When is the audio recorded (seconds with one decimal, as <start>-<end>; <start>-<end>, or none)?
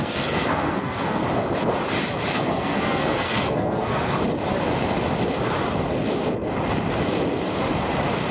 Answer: 1.2-2.3; 4.2-8.3